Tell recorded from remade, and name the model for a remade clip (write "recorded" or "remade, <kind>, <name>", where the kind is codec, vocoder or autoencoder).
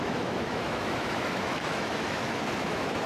remade, autoencoder, DAC-VAE